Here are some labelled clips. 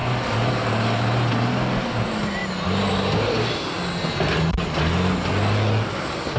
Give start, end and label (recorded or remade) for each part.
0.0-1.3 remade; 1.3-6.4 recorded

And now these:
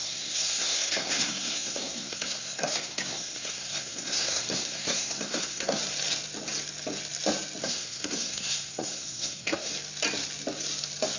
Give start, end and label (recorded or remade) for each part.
0.0-5.8 remade; 5.8-7.6 recorded; 7.6-9.7 remade; 9.7-11.2 recorded

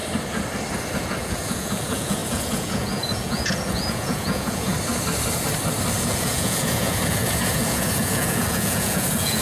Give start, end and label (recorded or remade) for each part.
0.0-1.0 recorded; 1.0-4.7 remade; 4.7-6.0 recorded; 6.0-9.4 remade